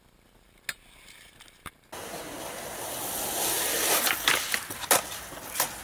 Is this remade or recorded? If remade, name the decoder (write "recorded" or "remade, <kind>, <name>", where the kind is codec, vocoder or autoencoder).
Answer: recorded